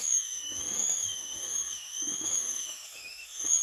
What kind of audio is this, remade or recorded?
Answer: remade